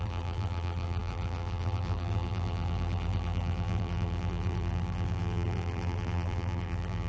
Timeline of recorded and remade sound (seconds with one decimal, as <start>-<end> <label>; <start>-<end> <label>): 0.0-7.1 remade